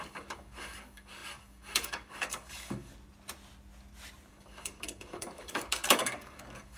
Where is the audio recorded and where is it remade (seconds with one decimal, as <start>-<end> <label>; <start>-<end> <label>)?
0.0-2.9 remade; 2.9-4.3 recorded; 4.3-6.8 remade